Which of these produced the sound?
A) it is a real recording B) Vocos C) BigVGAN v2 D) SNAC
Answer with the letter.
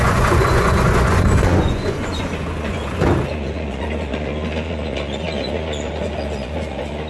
B